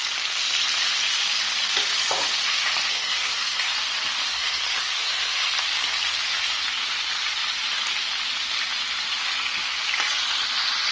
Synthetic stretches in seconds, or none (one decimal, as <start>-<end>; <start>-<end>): 2.9-3.7; 4.3-5.5